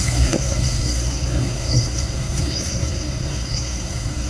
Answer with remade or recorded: remade